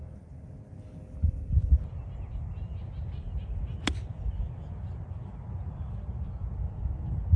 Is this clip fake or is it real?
real